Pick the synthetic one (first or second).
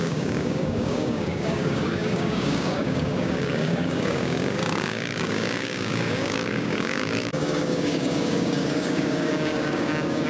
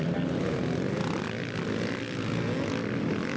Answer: first